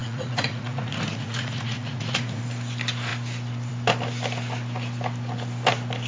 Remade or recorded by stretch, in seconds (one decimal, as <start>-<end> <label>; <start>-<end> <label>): 0.0-2.4 remade; 2.4-6.1 recorded